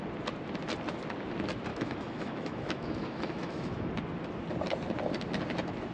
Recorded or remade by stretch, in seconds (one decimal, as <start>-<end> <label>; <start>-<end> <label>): 0.0-1.7 recorded; 1.7-3.9 remade; 3.9-5.9 recorded